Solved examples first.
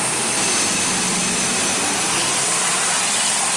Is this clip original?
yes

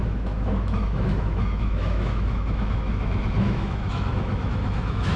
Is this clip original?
no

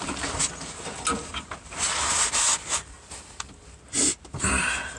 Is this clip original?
yes